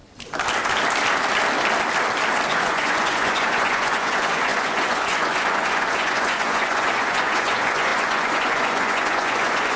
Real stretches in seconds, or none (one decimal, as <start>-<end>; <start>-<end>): 0.0-2.5

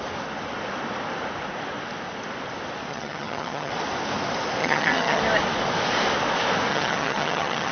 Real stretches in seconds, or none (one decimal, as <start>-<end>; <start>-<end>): 0.0-2.9; 3.7-4.6; 5.2-6.7

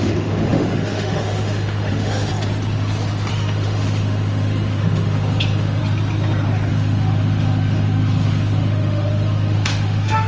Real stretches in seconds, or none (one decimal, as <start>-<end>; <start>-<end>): 2.3-3.3; 5.8-6.7

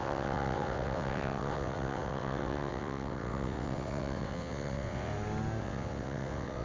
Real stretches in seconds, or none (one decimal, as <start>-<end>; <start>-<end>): 5.1-5.6